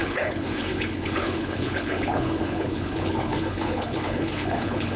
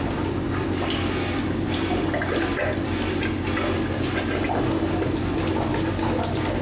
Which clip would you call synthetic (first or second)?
first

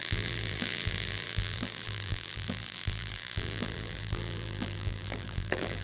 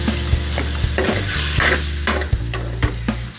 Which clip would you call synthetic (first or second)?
first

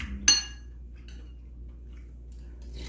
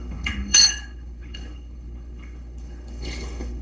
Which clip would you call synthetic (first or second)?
second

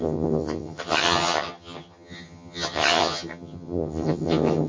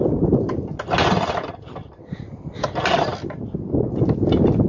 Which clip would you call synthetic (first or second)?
first